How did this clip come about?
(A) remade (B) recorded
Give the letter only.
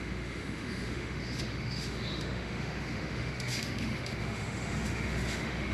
A